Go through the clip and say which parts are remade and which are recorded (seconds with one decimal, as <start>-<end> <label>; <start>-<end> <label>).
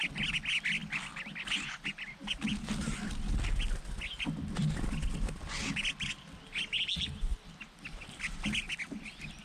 0.0-7.3 recorded; 7.3-8.6 remade; 8.6-9.4 recorded